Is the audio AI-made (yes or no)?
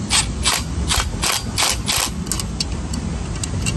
no